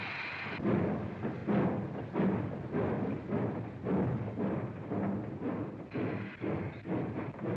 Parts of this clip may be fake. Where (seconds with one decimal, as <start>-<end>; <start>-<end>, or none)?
none